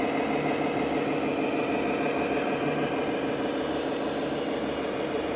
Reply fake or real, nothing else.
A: real